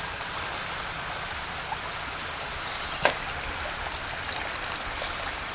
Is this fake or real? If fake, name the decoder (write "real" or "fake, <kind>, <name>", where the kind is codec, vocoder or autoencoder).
real